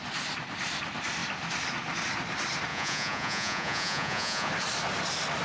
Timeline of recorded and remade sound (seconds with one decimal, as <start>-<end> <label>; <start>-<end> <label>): 0.0-2.7 recorded; 2.7-4.5 remade; 4.5-5.4 recorded